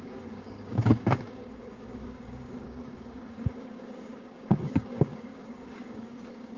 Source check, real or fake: fake